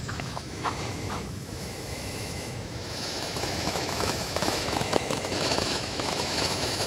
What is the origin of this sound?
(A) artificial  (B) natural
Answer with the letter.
A